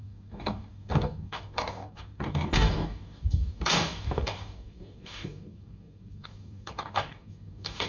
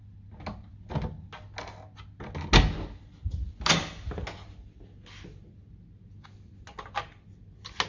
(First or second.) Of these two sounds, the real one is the second